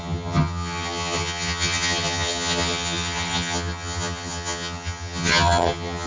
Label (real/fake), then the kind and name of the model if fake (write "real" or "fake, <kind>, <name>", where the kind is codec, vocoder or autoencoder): fake, vocoder, HiFi-GAN